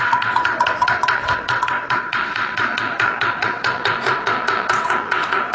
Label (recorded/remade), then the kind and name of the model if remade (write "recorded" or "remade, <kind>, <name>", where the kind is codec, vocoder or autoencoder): remade, vocoder, WaveNeXt